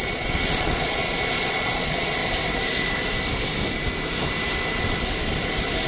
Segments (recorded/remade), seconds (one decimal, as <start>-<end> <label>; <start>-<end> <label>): 0.0-2.2 remade; 2.2-5.9 recorded